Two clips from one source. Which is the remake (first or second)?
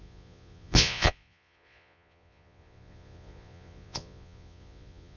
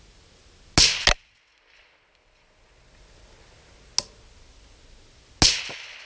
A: first